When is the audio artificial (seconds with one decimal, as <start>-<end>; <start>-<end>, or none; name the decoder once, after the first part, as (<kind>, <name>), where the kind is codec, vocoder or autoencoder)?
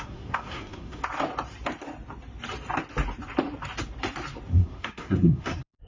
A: 0.0-1.0 (codec, SNAC); 4.5-5.9